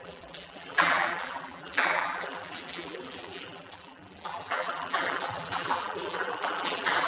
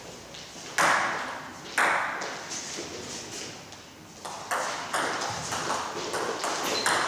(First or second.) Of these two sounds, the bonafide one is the second